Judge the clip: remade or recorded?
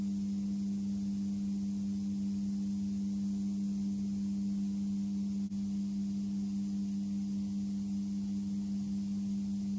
recorded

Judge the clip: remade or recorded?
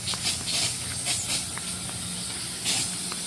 recorded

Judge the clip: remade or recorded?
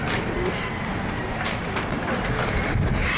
recorded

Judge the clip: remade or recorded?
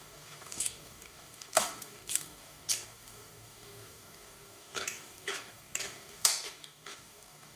remade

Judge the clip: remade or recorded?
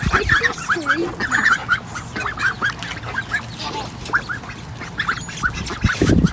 recorded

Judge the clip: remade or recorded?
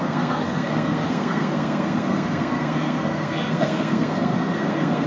remade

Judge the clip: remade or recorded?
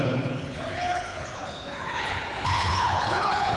remade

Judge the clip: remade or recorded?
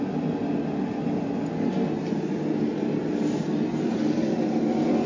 recorded